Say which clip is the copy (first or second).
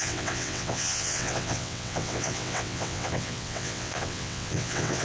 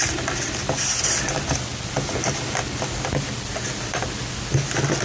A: first